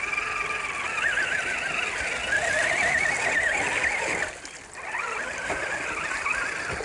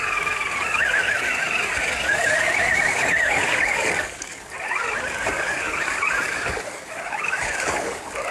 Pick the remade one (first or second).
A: second